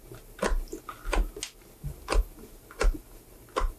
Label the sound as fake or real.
real